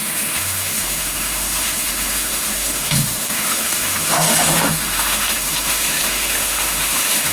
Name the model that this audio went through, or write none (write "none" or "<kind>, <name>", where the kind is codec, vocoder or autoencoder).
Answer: autoencoder, DAC-VAE